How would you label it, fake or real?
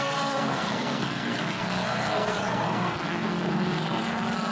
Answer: fake